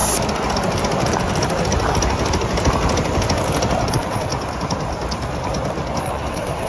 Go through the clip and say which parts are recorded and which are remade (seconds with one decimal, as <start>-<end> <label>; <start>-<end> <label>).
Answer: 0.0-3.9 recorded; 3.9-4.3 remade; 4.3-6.0 recorded; 6.0-6.7 remade